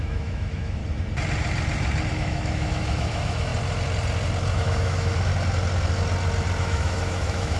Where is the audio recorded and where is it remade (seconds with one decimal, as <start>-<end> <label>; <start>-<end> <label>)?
0.0-0.8 remade; 0.8-2.1 recorded; 2.1-3.5 remade; 3.5-4.5 recorded; 4.5-5.3 remade; 5.3-6.6 recorded; 6.6-7.6 remade